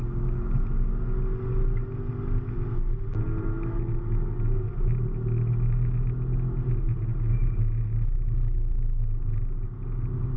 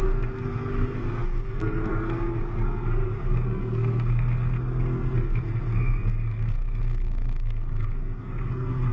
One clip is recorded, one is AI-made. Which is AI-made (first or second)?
second